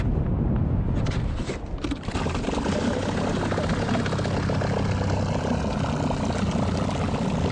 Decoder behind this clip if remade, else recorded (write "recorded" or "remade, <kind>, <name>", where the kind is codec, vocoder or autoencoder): recorded